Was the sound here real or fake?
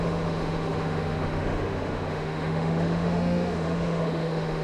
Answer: fake